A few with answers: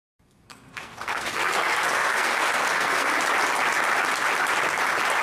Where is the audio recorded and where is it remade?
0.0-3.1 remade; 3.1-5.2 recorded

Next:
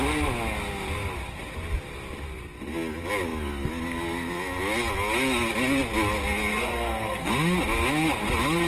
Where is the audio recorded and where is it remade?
0.0-6.5 recorded; 6.5-7.3 remade; 7.3-8.7 recorded

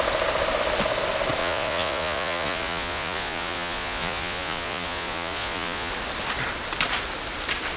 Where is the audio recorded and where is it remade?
0.0-1.4 recorded; 1.4-5.9 remade; 5.9-7.8 recorded

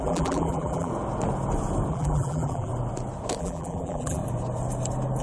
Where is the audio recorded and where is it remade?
0.0-0.9 remade; 0.9-1.9 recorded; 1.9-2.7 remade; 2.7-3.4 recorded; 3.4-4.2 remade; 4.2-5.2 recorded

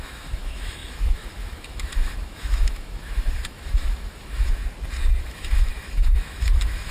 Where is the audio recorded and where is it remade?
0.0-4.6 remade; 4.6-5.2 recorded; 5.2-6.9 remade

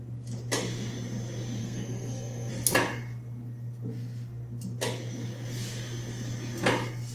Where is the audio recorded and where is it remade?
0.0-1.6 recorded; 1.6-2.5 remade; 2.5-7.1 recorded